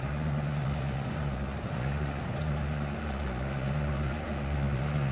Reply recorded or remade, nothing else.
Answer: remade